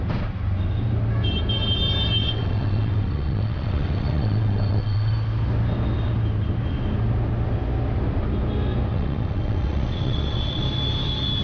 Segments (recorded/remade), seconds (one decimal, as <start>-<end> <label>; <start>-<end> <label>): 0.0-2.2 recorded; 2.2-5.1 remade; 5.1-8.9 recorded; 8.9-10.6 remade; 10.6-11.4 recorded